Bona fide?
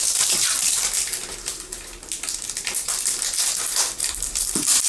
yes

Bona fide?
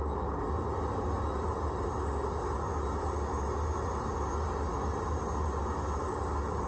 yes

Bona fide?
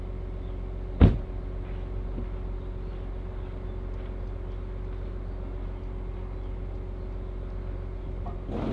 yes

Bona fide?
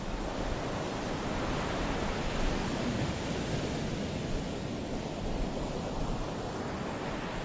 yes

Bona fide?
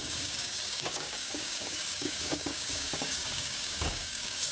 no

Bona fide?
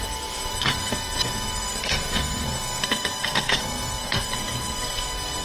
no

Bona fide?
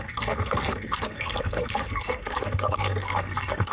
no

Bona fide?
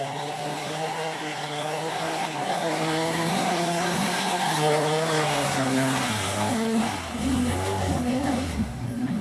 no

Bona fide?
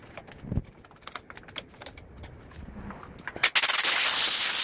yes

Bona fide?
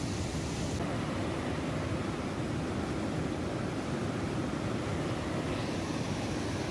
yes